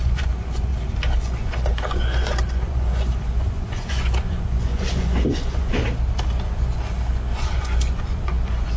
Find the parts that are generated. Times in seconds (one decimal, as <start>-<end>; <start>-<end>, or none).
0.0-0.7; 1.2-5.8; 6.4-8.8